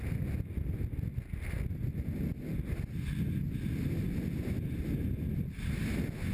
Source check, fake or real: real